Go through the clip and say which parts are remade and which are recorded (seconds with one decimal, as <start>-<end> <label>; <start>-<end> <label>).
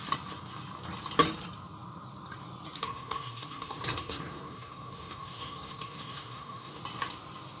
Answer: 0.0-2.8 recorded; 2.8-6.8 remade; 6.8-7.6 recorded